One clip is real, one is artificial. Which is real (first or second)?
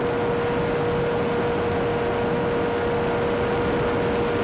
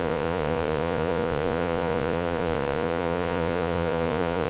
first